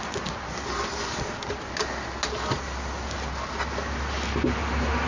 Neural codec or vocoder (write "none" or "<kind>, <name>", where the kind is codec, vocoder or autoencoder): none